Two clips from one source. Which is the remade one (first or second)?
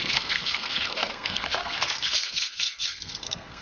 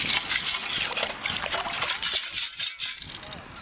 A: first